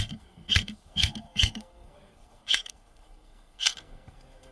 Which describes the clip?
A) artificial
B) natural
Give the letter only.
A